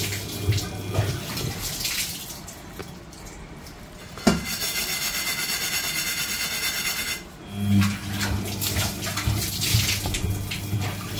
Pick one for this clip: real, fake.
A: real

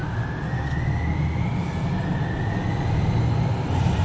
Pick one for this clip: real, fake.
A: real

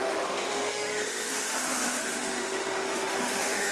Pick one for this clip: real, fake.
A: fake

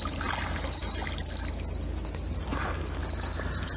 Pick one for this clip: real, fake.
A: real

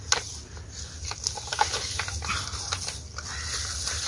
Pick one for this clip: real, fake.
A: real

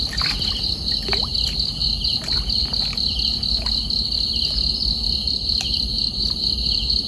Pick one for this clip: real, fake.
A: real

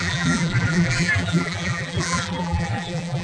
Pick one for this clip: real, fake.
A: fake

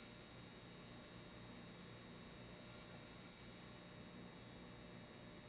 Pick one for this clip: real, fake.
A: real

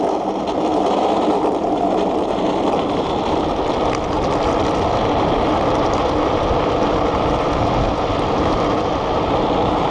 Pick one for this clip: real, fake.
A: real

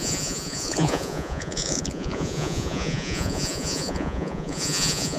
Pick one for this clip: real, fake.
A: fake